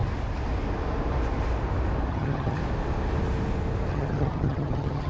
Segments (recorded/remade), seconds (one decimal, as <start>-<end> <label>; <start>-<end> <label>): 0.0-2.1 recorded; 2.1-2.6 remade; 2.6-3.9 recorded; 3.9-5.1 remade